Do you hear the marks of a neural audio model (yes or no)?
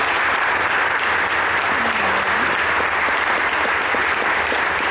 no